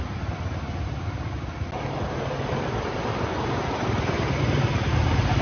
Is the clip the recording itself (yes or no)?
yes